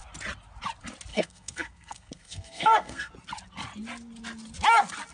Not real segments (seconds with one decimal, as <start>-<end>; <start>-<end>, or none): 1.1-3.1